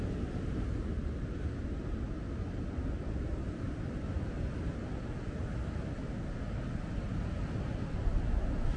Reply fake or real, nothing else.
real